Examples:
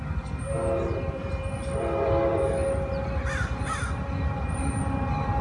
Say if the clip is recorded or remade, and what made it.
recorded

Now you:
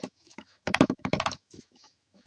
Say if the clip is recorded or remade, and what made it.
remade, autoencoder, DAC-VAE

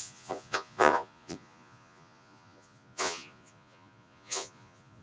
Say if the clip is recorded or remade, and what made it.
remade, vocoder, Vocos